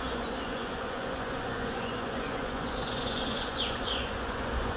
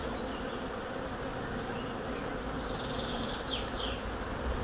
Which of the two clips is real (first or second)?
second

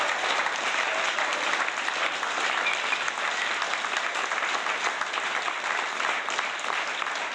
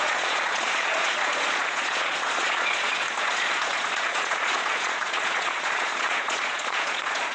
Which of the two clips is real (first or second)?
first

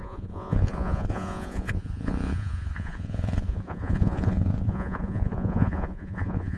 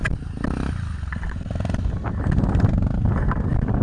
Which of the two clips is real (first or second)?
second